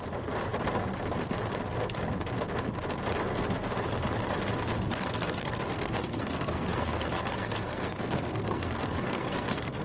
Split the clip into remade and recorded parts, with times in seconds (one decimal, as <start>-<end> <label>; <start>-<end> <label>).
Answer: 0.0-4.9 recorded; 4.9-9.8 remade